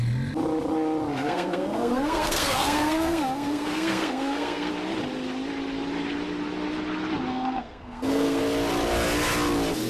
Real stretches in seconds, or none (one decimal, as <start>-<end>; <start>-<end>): 0.0-1.1; 4.7-7.3; 8.4-9.9